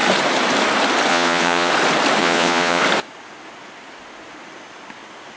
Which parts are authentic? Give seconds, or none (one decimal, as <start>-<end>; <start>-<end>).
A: 0.0-1.1; 1.7-2.2; 2.8-5.4